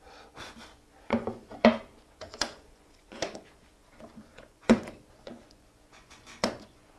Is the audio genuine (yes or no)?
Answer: no